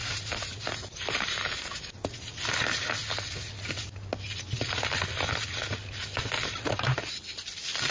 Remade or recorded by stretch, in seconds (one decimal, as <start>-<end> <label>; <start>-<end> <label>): 0.0-1.8 remade; 1.8-7.9 recorded

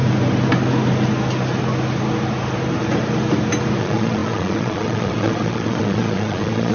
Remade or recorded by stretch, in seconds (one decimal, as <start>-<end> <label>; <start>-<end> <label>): 0.0-3.8 recorded; 3.8-6.7 remade

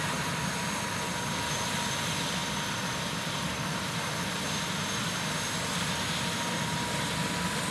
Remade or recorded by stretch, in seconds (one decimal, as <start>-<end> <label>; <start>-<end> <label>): 0.0-7.7 recorded